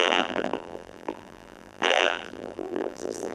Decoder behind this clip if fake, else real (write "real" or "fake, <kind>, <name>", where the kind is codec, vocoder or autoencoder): fake, vocoder, BigVGAN v2